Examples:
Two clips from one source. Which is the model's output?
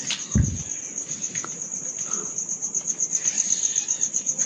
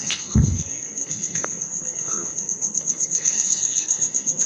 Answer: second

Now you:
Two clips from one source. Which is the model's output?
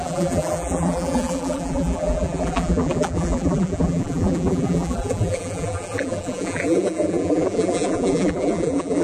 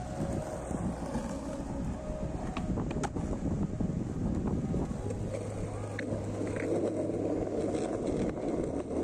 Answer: first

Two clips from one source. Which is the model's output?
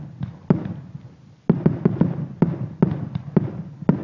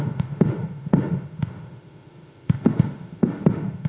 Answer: second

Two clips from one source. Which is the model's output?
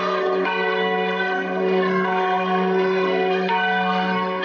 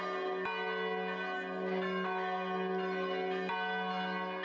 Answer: first